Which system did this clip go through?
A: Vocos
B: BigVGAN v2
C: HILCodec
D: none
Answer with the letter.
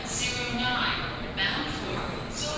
D